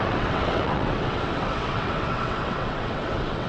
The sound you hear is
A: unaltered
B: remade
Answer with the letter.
B